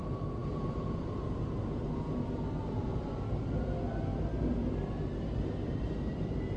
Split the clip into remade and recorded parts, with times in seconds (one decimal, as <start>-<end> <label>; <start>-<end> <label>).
0.0-6.6 recorded

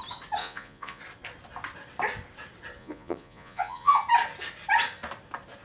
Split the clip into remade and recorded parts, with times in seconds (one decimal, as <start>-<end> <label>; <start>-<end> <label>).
0.0-0.4 recorded; 0.4-1.0 remade; 1.0-2.8 recorded; 2.8-4.0 remade; 4.0-5.6 recorded

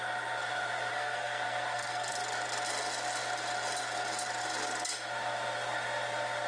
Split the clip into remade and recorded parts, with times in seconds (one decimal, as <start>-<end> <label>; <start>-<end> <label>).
0.0-0.9 recorded; 0.9-2.1 remade; 2.1-6.5 recorded

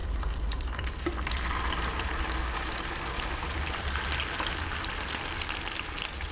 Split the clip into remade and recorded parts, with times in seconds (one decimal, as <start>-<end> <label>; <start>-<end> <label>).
0.0-3.8 remade; 3.8-6.3 recorded

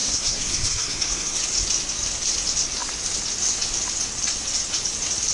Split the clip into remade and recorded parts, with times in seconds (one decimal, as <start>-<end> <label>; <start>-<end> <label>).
0.0-1.4 remade; 1.4-5.3 recorded